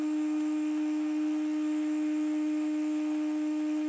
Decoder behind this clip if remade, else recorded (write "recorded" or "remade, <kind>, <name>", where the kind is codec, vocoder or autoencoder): remade, autoencoder, DAC-VAE